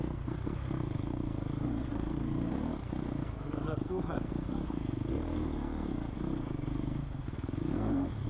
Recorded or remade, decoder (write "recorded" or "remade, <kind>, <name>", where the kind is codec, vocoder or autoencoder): remade, codec, SNAC